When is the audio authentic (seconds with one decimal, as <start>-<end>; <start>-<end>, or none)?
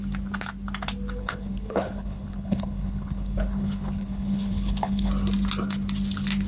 0.0-1.2; 5.1-6.5